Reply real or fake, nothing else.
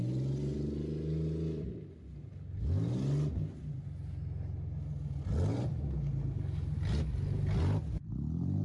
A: real